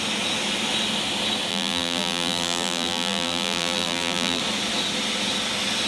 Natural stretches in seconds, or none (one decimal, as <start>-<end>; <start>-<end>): 0.0-1.5; 4.4-5.9